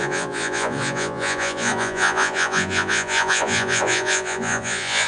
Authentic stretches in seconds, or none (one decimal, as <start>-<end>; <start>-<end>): none